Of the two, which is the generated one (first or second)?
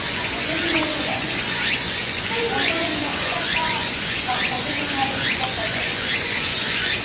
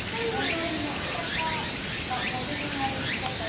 first